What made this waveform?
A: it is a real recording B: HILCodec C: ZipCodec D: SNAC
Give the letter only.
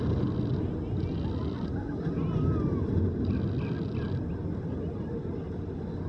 A